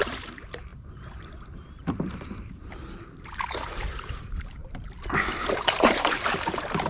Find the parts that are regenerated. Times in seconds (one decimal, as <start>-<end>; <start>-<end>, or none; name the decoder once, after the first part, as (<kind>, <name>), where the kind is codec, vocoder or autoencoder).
0.0-4.6 (vocoder, BigVGAN v2); 5.5-6.9